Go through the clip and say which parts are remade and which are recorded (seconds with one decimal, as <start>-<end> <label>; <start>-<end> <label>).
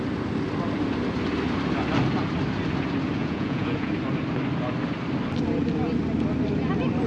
0.0-3.2 recorded; 3.2-3.9 remade; 3.9-7.1 recorded